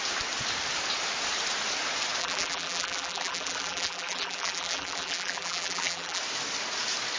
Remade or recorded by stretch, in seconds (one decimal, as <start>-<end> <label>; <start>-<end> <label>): 0.0-2.2 recorded; 2.2-6.2 remade; 6.2-7.2 recorded